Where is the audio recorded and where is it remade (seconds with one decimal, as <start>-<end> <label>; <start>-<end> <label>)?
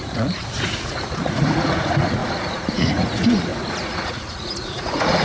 0.0-5.2 remade